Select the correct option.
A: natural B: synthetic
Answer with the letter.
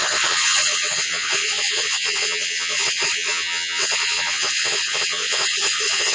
B